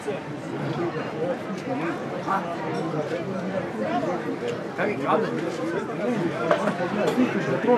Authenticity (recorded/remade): remade